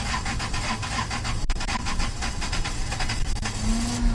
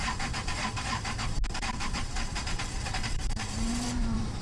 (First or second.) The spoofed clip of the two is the second